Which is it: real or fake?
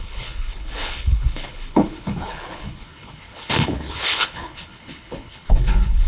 fake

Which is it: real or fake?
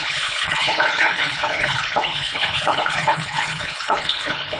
fake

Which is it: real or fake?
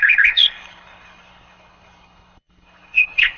fake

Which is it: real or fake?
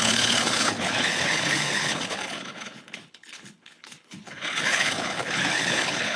fake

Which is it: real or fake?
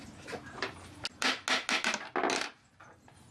real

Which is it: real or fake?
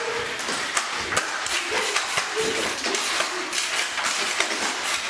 real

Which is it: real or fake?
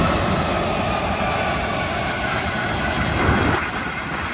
real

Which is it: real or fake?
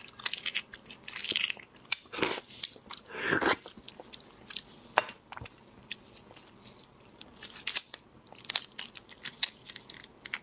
real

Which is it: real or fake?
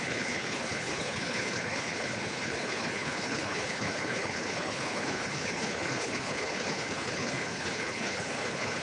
fake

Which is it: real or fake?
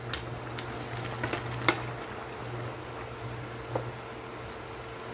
real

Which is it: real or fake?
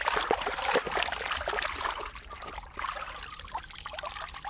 real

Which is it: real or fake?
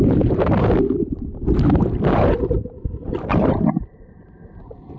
real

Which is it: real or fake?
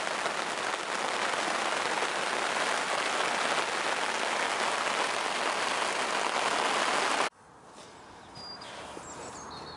real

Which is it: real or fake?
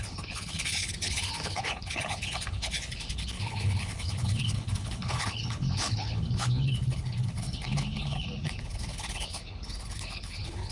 fake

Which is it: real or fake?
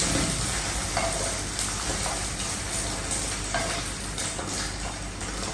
real